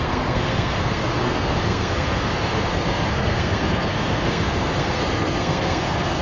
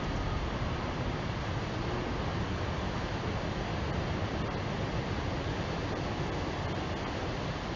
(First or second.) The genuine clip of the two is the second